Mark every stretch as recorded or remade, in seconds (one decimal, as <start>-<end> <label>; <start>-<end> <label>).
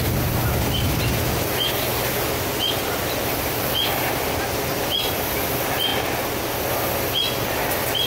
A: 0.0-8.1 recorded